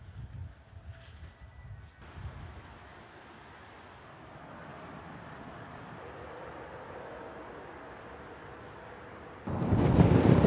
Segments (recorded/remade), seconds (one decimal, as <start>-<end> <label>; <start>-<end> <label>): 0.0-10.5 recorded